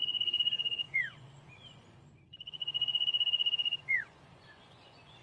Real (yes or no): no